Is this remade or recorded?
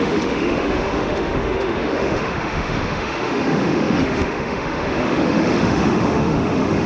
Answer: remade